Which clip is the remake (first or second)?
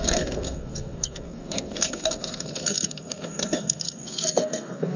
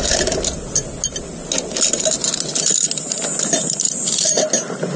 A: first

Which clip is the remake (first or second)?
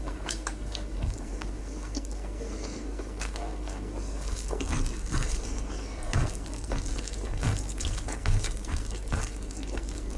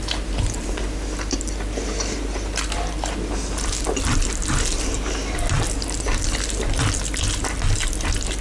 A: first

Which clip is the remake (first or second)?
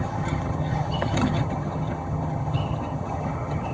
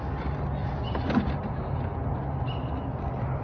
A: first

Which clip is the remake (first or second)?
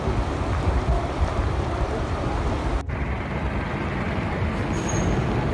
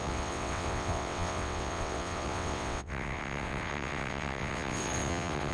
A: second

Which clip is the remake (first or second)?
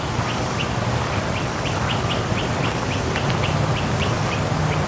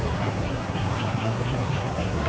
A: second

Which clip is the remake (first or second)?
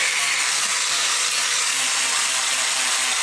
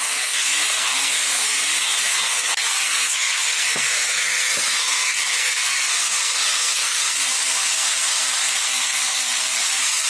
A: second